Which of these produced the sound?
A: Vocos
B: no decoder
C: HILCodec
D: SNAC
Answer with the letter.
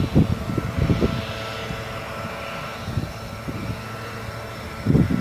B